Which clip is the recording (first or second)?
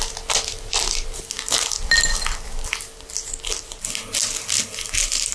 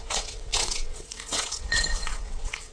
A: first